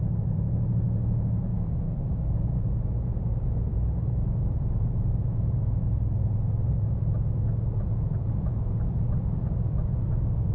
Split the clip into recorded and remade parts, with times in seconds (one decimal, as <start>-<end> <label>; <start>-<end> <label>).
0.0-3.7 remade; 3.7-4.2 recorded; 4.2-10.5 remade